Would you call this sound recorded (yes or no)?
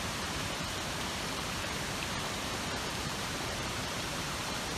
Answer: no